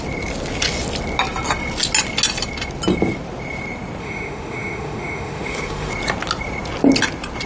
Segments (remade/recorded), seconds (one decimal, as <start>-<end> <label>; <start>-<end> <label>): 0.0-4.0 recorded; 4.0-5.9 remade; 5.9-7.5 recorded